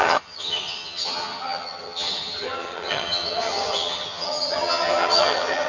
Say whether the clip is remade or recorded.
remade